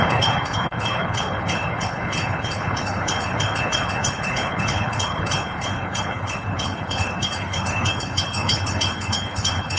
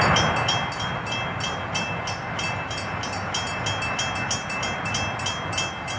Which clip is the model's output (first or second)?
first